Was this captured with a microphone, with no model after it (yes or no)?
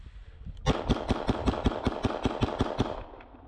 yes